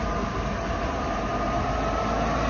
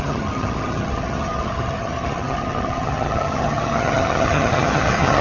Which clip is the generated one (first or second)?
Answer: second